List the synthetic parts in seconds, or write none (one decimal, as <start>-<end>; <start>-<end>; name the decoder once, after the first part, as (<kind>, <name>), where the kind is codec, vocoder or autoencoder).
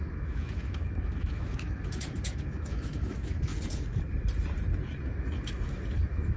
0.0-3.5 (autoencoder, DAC-VAE); 5.0-6.4